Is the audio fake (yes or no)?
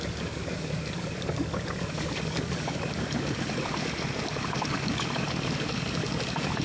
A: yes